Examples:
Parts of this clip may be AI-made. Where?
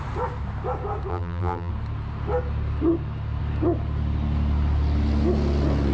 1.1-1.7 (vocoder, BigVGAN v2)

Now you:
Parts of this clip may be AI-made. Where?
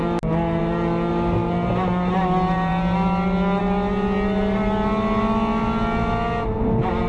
1.1-1.7 (vocoder, BigVGAN v2)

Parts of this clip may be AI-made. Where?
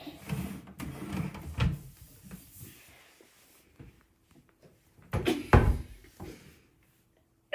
1.6-2.1 (vocoder, BigVGAN v2); 5.6-6.4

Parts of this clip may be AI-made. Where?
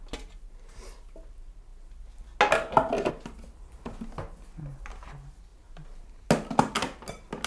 none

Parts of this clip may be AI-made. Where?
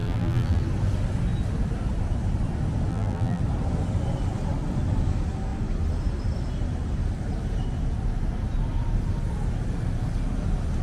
0.0-0.6 (vocoder, BigVGAN v2); 2.9-3.4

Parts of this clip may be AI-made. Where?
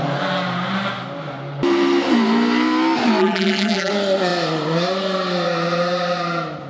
3.2-3.9 (vocoder, BigVGAN v2)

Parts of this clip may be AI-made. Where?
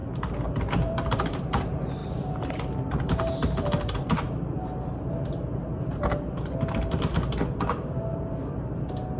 0.0-1.6 (vocoder, BigVGAN v2)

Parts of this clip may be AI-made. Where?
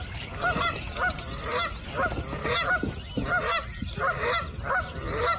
0.0-1.5 (vocoder, BigVGAN v2); 4.7-5.4